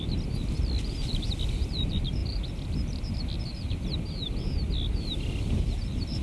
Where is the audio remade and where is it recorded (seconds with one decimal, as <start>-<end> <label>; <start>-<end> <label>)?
0.0-6.2 recorded